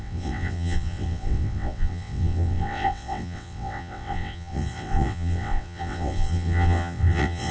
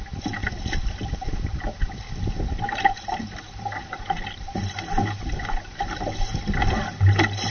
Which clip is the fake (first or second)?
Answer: first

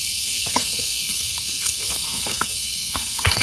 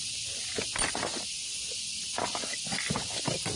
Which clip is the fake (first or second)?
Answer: first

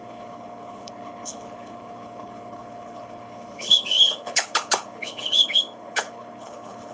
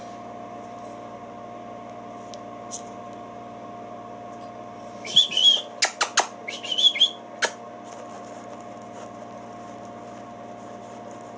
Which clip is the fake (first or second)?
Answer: first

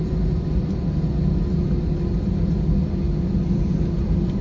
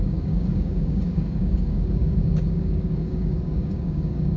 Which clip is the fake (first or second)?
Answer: second